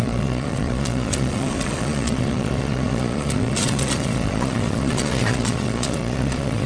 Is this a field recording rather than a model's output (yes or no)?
no